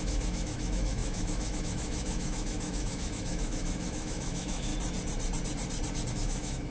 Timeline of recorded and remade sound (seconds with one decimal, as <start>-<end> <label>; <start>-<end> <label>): 0.0-4.7 remade; 4.7-6.1 recorded; 6.1-6.7 remade